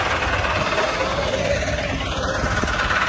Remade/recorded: recorded